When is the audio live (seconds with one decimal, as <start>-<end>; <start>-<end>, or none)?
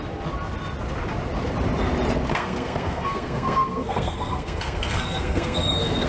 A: 0.0-2.3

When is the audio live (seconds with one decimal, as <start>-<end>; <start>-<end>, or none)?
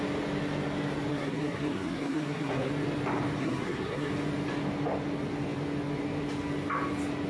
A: 0.0-1.1; 2.7-3.4; 4.1-7.3